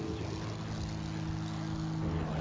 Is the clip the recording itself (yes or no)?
yes